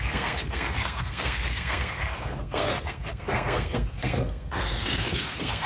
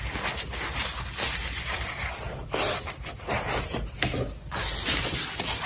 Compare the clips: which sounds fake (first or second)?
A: first